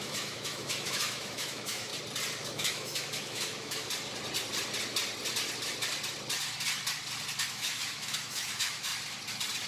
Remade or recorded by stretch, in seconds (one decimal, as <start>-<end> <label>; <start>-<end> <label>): 0.0-1.9 remade; 1.9-2.4 recorded; 2.4-3.8 remade; 3.8-7.5 recorded; 7.5-8.9 remade; 8.9-9.7 recorded